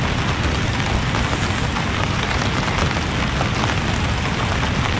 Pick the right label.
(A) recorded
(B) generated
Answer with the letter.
A